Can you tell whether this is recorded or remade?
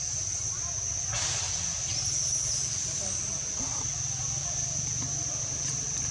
recorded